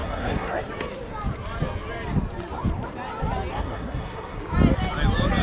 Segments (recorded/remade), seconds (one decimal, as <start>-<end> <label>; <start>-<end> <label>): 0.0-0.6 remade; 0.6-3.5 recorded; 3.5-4.4 remade; 4.4-5.4 recorded